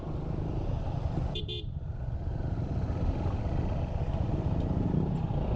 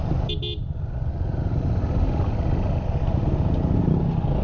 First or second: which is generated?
first